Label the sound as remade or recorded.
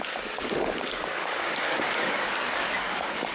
remade